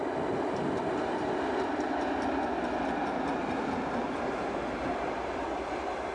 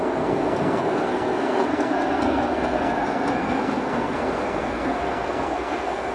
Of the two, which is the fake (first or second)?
second